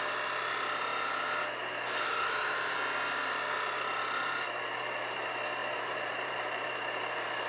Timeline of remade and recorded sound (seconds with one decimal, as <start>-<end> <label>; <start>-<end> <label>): 0.0-5.6 recorded; 5.6-7.0 remade; 7.0-7.5 recorded